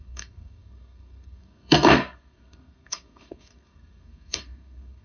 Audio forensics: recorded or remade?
remade